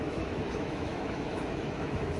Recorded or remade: remade